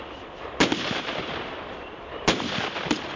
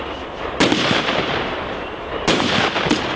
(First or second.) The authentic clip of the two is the second